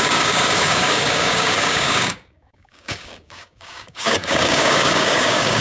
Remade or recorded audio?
remade